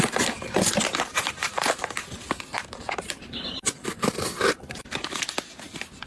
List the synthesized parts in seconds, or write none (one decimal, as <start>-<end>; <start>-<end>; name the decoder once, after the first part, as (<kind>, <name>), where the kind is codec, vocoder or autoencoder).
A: 2.5-4.8 (vocoder, BigVGAN v2)